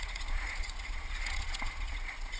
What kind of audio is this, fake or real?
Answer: fake